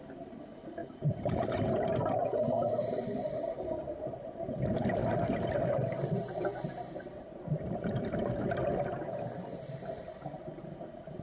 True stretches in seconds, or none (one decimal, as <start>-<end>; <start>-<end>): 5.0-5.7